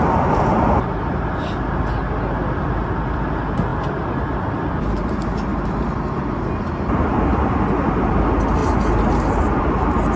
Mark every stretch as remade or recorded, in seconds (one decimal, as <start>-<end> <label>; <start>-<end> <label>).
0.0-10.2 recorded